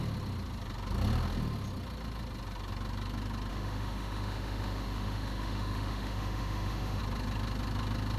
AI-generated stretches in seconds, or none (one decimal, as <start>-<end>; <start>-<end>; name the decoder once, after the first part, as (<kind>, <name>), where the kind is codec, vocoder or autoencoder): 3.5-7.0 (autoencoder, DAC-VAE)